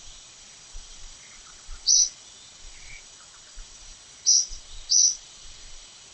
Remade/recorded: remade